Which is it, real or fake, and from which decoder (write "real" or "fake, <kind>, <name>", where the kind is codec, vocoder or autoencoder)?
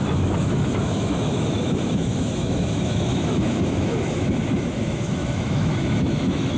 fake, autoencoder, DAC-VAE